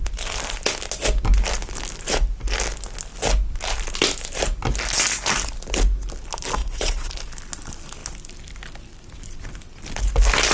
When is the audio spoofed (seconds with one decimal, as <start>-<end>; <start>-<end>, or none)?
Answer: 6.6-7.1